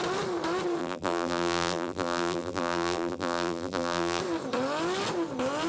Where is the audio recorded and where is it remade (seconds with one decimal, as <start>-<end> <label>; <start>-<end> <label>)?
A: 0.0-0.8 recorded; 0.8-4.2 remade; 4.2-5.7 recorded